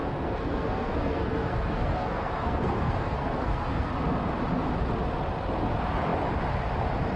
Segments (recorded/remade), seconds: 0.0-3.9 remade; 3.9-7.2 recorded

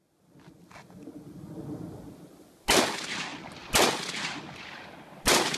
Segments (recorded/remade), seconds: 0.0-5.6 recorded

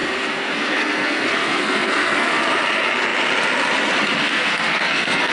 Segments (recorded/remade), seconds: 0.0-2.4 remade; 2.4-4.2 recorded; 4.2-5.3 remade

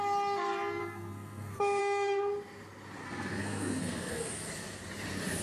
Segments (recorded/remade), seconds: 0.0-0.8 recorded; 0.8-1.8 remade; 1.8-3.0 recorded; 3.0-4.3 remade; 4.3-5.4 recorded

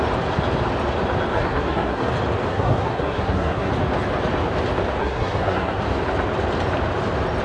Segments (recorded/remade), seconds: 0.0-1.3 recorded; 1.3-2.1 remade; 2.1-2.5 recorded; 2.5-3.7 remade; 3.7-5.0 recorded; 5.0-5.8 remade; 5.8-7.4 recorded